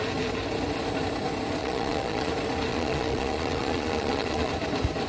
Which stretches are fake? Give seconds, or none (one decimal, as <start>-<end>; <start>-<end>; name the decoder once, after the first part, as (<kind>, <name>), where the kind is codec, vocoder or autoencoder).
1.6-2.3 (vocoder, Vocos); 2.7-4.5